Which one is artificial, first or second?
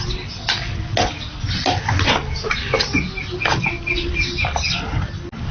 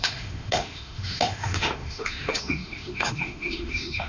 second